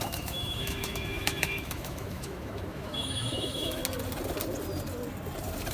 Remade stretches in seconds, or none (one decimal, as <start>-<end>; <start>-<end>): 0.0-3.8